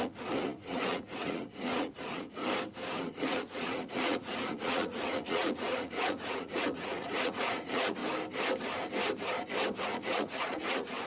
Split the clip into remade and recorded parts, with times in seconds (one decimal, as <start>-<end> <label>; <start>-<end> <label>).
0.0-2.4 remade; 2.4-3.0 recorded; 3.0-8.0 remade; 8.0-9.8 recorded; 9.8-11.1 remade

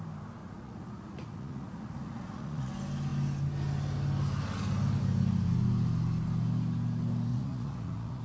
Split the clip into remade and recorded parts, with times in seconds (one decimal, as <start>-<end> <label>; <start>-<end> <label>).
0.0-0.4 recorded; 0.4-2.7 remade; 2.7-7.3 recorded; 7.3-8.2 remade

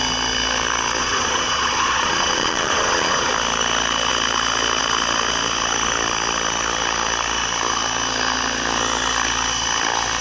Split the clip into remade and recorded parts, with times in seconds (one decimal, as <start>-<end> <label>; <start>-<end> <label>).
0.0-1.0 recorded; 1.0-3.3 remade; 3.3-10.2 recorded

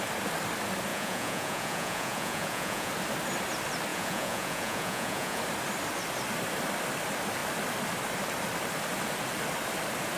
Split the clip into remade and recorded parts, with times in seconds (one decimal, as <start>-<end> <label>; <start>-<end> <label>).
0.0-0.9 recorded; 0.9-2.9 remade; 2.9-3.9 recorded; 3.9-5.4 remade; 5.4-10.2 recorded